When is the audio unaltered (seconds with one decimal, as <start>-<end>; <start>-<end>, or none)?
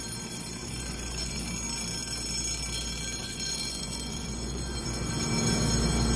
0.0-0.6; 1.4-3.2; 5.1-6.2